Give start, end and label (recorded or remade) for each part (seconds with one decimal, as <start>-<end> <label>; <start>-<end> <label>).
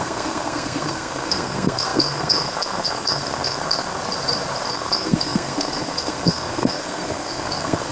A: 0.0-4.0 remade; 4.0-4.7 recorded; 4.7-7.9 remade